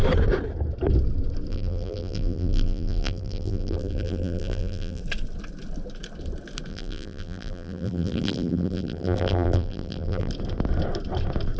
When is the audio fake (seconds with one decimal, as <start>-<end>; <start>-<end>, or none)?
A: 1.5-5.0; 6.7-10.3